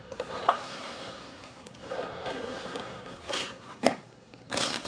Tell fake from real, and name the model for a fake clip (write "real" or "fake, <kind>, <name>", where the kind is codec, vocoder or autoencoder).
fake, codec, SNAC